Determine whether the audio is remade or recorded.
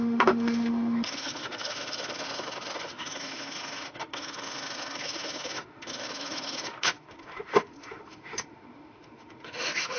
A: remade